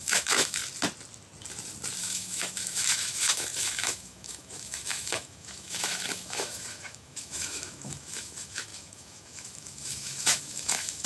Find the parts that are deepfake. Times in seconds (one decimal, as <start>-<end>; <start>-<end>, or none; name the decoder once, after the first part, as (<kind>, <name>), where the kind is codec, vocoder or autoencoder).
0.0-0.6 (autoencoder, DAC-VAE); 2.0-11.1